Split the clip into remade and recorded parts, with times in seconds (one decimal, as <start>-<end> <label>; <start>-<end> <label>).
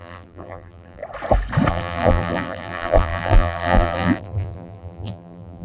0.0-1.0 remade; 1.0-1.7 recorded; 1.7-5.6 remade